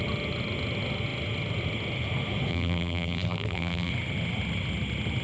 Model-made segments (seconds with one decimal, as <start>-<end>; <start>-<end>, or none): 2.5-3.9